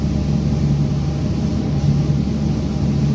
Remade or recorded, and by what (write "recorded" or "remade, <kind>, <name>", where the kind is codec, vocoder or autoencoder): recorded